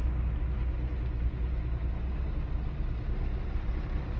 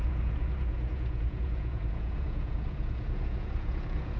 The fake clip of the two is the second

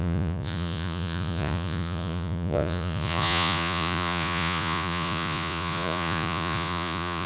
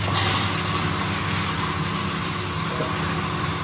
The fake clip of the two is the first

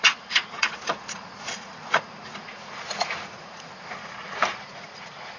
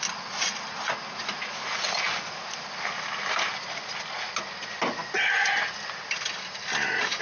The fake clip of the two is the first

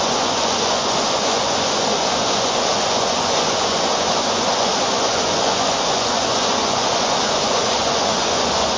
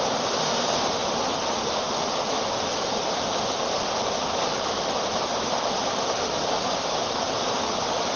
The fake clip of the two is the first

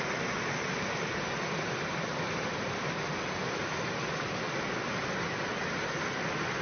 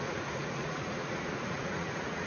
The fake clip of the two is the second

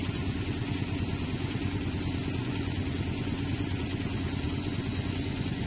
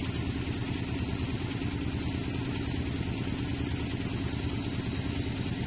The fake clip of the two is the first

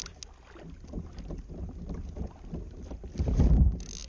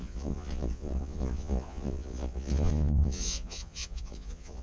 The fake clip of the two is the second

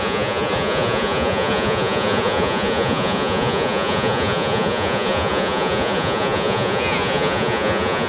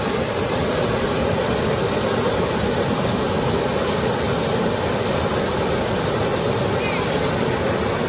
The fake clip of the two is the first